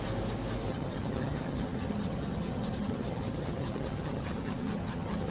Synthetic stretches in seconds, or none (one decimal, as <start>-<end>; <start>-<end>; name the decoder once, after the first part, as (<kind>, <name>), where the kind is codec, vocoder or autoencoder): 0.7-5.3 (vocoder, HiFi-GAN)